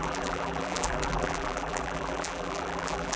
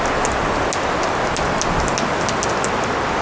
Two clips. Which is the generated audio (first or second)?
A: first